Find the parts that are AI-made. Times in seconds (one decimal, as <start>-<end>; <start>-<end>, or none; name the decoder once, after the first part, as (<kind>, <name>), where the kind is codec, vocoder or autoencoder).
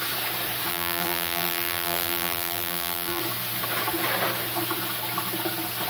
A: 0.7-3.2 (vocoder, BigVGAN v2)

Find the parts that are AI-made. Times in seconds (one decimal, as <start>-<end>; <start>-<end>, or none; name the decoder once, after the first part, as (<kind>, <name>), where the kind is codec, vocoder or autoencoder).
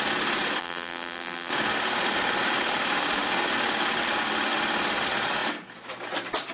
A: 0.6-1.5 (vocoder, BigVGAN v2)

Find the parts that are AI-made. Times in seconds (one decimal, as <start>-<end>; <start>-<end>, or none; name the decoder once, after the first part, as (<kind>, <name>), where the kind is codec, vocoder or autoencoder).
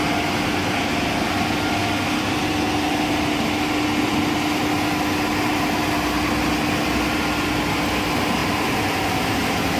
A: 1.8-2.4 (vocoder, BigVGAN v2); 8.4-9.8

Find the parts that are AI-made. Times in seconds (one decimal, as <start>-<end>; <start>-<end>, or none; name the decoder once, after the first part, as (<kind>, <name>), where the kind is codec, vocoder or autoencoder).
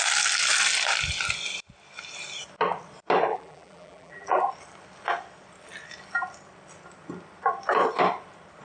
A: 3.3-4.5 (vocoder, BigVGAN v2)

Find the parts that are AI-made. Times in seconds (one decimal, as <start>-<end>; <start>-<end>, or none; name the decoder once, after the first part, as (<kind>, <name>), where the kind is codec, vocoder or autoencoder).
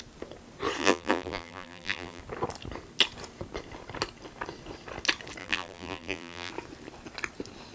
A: 0.8-2.2 (vocoder, BigVGAN v2); 5.4-6.5